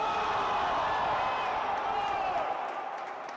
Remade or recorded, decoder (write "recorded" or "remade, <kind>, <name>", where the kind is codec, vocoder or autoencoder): recorded